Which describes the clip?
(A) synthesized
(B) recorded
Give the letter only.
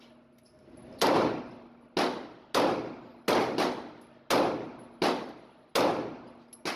B